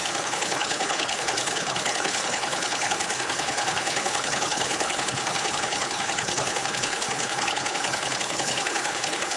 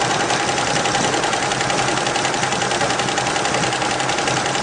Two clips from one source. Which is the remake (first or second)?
first